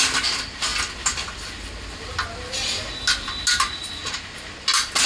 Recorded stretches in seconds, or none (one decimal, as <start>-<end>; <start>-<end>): 0.0-5.1